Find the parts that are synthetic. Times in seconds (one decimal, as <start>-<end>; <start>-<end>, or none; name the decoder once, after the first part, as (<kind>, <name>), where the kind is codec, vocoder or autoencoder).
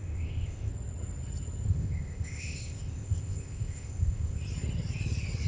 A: 0.0-0.7 (codec, ZipCodec); 1.7-4.4